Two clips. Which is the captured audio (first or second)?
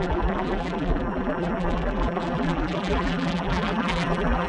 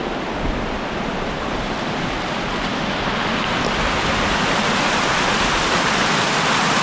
second